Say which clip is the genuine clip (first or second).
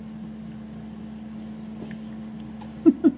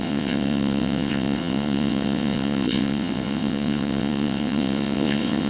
first